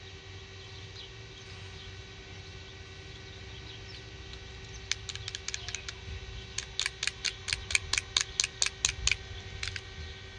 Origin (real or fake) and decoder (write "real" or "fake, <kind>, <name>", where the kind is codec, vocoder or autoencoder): real